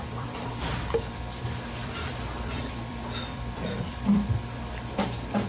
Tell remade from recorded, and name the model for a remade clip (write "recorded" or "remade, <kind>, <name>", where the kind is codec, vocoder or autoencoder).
remade, vocoder, BigVGAN v2